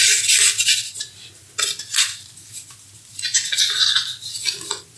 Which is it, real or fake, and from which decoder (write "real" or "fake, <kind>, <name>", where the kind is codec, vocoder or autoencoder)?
real